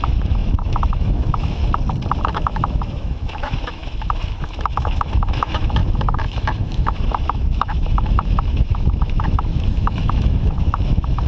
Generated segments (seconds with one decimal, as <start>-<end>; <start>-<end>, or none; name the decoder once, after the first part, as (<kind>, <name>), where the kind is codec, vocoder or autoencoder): 0.0-1.6 (autoencoder, DAC-VAE); 2.2-11.3